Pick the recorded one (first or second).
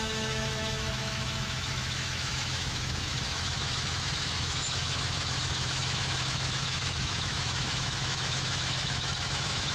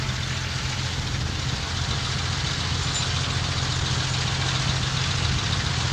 second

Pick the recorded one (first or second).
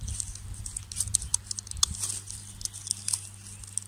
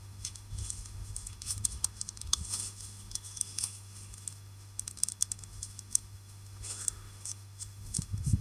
first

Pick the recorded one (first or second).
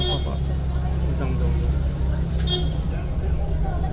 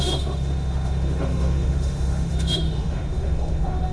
first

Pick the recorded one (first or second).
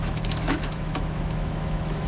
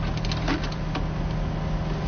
second